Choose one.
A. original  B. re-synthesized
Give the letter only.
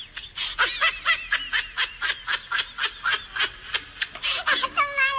A